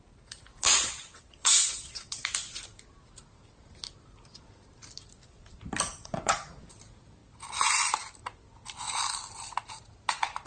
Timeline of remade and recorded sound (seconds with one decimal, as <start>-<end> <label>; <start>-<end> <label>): 0.0-0.7 recorded; 0.7-2.3 remade; 2.3-6.0 recorded; 6.0-6.6 remade; 6.6-10.5 recorded